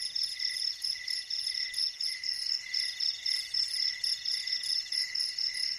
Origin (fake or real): real